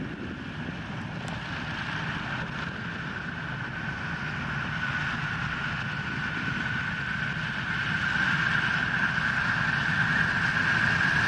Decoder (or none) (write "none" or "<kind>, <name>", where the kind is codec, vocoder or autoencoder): none